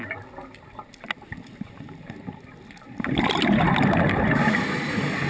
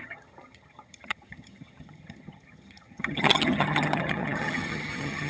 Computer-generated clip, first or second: second